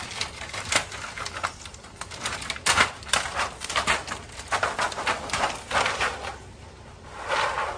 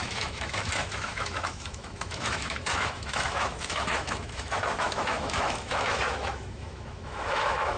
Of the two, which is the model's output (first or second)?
second